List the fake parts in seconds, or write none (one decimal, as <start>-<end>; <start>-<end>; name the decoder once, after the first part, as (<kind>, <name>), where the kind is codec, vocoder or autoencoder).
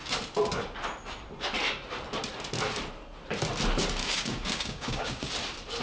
4.0-5.3 (codec, DAC)